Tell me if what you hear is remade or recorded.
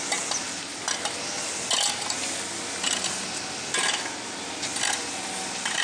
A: recorded